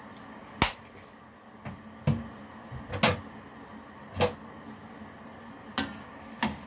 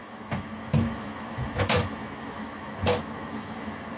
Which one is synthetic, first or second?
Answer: second